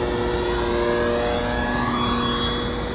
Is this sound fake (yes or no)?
no